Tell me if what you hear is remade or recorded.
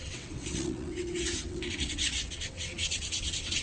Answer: remade